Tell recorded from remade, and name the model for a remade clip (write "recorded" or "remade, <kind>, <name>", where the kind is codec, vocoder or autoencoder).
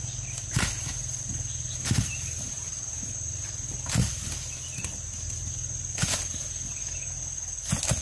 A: recorded